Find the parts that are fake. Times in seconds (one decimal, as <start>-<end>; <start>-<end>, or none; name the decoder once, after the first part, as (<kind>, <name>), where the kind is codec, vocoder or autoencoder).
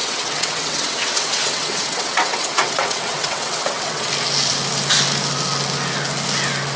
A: 0.0-4.1 (vocoder, WaveNeXt)